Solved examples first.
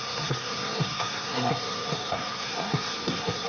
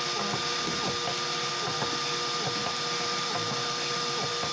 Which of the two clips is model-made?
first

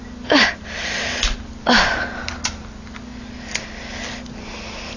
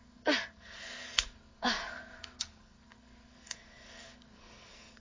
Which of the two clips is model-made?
second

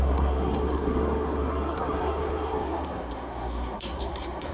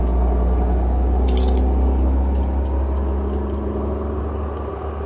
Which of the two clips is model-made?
first